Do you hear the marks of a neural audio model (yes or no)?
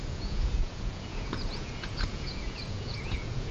yes